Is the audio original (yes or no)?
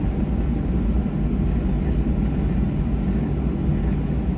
yes